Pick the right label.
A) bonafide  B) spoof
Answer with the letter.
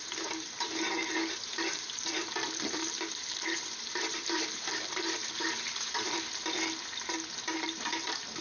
B